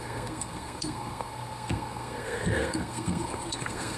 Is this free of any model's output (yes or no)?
no